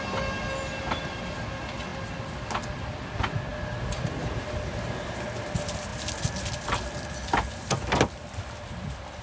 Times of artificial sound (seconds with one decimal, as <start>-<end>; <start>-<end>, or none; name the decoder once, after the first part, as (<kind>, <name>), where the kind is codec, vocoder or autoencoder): none